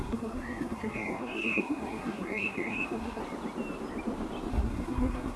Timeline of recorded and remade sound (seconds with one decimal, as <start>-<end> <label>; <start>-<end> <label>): 0.0-3.2 remade; 3.2-4.5 recorded; 4.5-5.4 remade